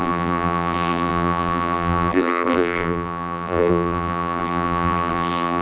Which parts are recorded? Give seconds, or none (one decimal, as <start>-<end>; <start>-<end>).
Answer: none